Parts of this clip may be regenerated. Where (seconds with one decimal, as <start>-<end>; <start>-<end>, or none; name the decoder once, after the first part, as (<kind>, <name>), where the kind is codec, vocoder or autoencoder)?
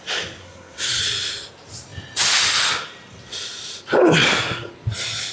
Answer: 0.4-1.0 (codec, SNAC)